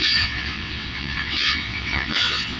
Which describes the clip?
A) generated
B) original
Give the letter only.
A